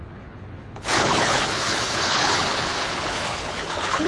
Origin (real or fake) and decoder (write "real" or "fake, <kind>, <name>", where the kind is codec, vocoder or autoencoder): fake, codec, HILCodec